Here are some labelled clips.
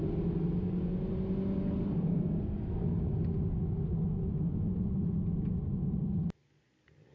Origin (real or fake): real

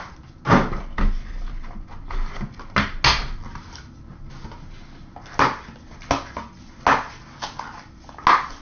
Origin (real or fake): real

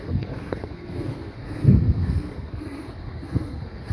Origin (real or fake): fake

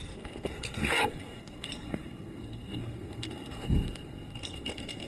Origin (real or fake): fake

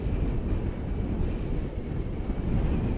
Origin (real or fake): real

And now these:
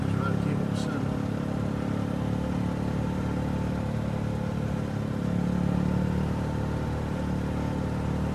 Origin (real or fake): real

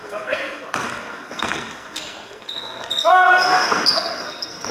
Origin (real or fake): fake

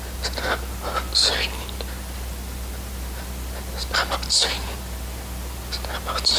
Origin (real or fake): real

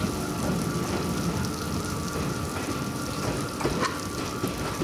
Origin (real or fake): real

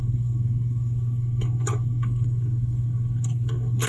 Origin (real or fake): fake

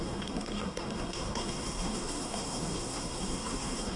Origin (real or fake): fake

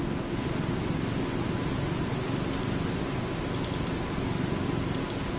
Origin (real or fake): real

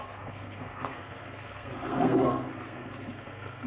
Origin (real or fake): fake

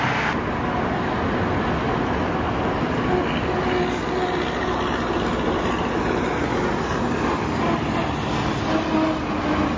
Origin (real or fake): real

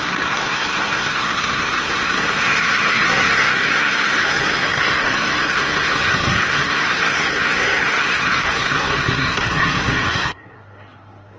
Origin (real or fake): fake